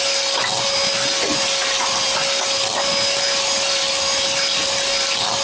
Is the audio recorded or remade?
recorded